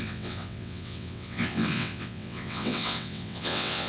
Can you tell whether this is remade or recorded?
remade